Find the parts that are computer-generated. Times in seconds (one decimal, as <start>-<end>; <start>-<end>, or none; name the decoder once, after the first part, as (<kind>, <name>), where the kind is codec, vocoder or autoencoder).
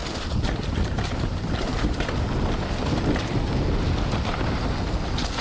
0.0-2.1 (vocoder, BigVGAN v2)